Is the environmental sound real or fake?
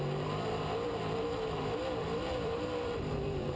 fake